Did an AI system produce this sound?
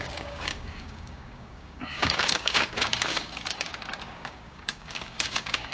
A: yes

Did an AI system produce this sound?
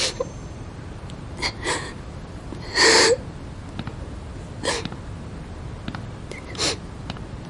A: yes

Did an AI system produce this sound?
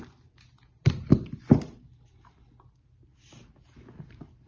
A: no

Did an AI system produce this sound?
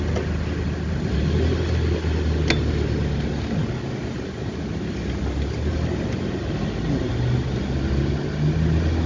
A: no